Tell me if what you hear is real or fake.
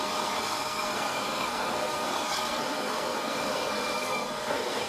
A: fake